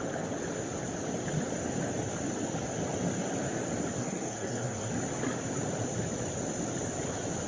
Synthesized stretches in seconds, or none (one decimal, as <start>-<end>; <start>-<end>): 4.0-4.9